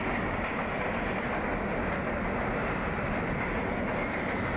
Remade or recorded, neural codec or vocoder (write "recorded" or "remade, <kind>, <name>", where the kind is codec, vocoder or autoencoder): recorded